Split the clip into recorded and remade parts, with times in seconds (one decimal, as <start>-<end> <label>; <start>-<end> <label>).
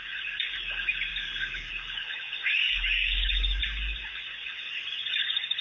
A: 0.0-1.1 recorded; 1.1-1.7 remade; 1.7-2.6 recorded; 2.6-3.6 remade; 3.6-5.6 recorded